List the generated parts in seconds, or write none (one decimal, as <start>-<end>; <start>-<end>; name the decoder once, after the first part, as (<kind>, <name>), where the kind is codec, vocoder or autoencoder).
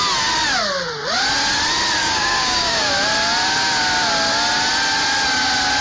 2.0-2.9 (codec, DAC)